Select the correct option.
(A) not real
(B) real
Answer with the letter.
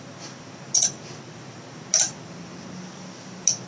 B